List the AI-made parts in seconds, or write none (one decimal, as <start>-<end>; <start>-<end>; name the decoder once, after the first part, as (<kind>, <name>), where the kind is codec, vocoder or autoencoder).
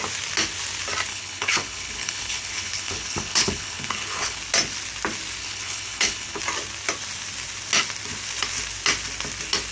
1.1-4.4 (codec, HILCodec); 5.4-6.4